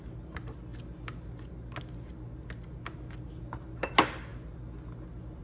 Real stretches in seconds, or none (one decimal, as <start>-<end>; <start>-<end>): 0.0-5.4